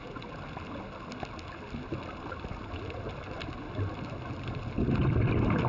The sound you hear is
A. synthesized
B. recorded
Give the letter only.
B